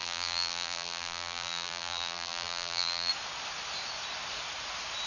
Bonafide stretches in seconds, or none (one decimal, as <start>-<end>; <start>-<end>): 3.1-5.1